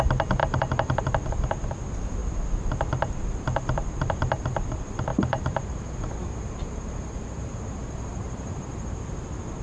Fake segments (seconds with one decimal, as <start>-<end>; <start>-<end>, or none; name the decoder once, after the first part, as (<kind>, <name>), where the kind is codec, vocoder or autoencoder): 0.4-1.0 (vocoder, BigVGAN v2); 5.1-9.0